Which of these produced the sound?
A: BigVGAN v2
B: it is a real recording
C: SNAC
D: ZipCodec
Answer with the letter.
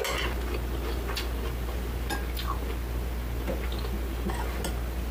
B